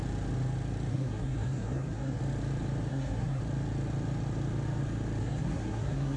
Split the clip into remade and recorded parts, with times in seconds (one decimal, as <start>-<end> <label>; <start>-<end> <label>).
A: 0.0-0.9 recorded; 0.9-2.2 remade; 2.2-2.9 recorded; 2.9-3.4 remade; 3.4-5.2 recorded; 5.2-6.2 remade